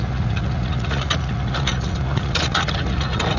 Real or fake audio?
fake